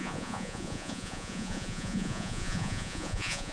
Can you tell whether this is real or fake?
fake